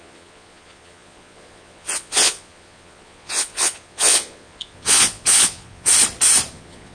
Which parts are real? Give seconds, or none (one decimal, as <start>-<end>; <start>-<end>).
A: 5.9-6.5